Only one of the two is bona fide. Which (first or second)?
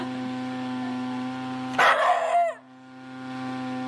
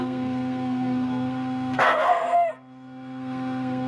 first